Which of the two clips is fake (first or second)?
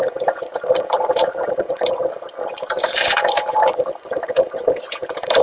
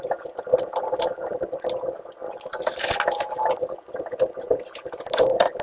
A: first